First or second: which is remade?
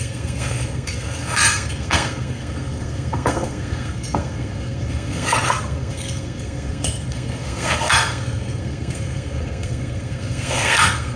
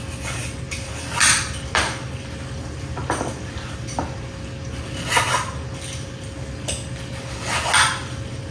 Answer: first